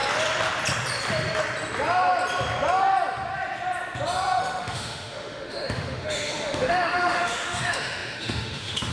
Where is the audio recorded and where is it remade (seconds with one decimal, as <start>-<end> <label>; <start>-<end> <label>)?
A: 0.0-4.4 recorded; 4.4-8.9 remade